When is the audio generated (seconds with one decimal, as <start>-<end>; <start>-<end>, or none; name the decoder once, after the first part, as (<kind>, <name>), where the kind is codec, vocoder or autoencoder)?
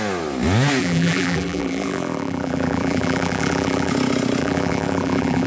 0.8-3.9 (vocoder, BigVGAN v2); 4.4-5.5